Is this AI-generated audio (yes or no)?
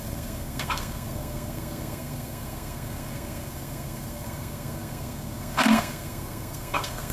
yes